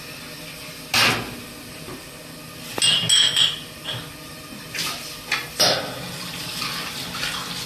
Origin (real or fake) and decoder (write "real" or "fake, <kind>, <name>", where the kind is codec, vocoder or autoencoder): real